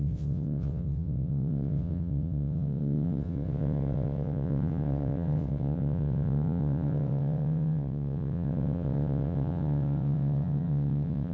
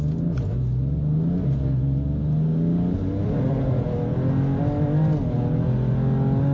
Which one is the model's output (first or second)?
first